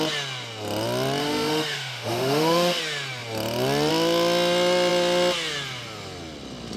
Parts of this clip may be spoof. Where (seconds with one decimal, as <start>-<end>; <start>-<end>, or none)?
1.2-2.8